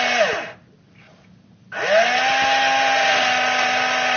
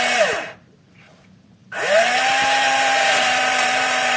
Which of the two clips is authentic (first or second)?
first